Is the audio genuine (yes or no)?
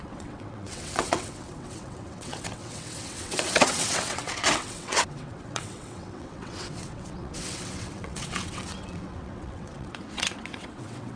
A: no